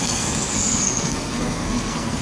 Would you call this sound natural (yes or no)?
no